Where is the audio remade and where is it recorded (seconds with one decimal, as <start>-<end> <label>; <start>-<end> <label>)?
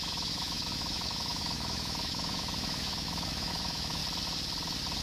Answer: 0.0-4.0 remade; 4.0-5.0 recorded